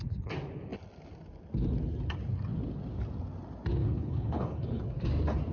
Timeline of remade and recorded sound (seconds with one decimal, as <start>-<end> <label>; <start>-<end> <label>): 0.0-3.8 recorded; 3.8-4.8 remade; 4.8-5.5 recorded